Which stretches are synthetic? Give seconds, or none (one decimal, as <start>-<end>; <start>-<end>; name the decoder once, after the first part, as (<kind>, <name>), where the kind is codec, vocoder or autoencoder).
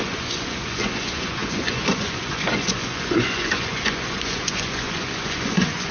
0.0-5.9 (vocoder, Vocos)